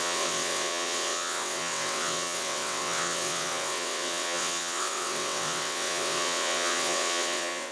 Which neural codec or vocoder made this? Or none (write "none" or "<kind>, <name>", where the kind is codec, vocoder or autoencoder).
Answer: vocoder, WaveNeXt